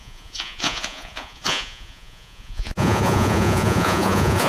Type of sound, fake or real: fake